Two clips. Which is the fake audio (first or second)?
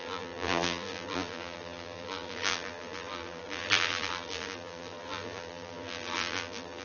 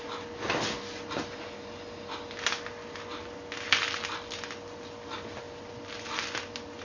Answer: first